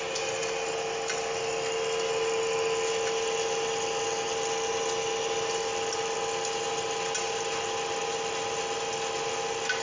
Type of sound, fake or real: real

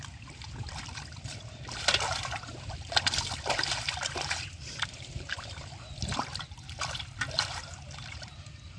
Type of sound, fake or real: fake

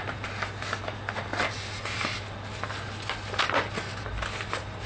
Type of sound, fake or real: real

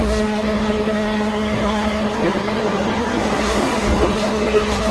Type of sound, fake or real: fake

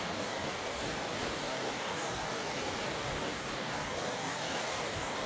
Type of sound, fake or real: fake